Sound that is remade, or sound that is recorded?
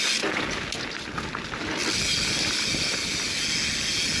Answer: recorded